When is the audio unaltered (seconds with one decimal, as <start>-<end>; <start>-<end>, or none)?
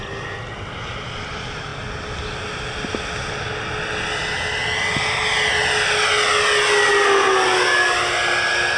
0.0-8.8